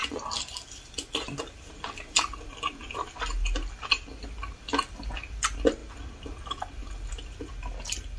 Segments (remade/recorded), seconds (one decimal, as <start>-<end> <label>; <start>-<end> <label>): 0.0-8.2 recorded